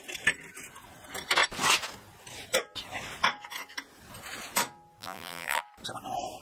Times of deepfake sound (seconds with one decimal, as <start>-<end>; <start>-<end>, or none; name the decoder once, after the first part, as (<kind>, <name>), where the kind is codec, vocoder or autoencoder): 5.0-5.6 (vocoder, BigVGAN v2)